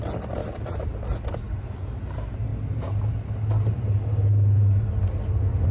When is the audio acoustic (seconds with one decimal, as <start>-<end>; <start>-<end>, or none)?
0.0-0.4; 1.3-5.7